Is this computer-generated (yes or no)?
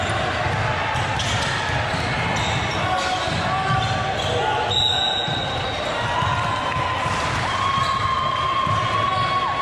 no